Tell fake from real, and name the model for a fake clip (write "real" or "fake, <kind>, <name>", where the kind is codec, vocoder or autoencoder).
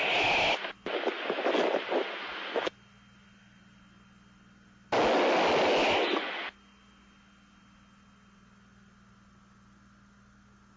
real